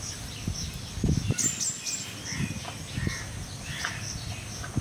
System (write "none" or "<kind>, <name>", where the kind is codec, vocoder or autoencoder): none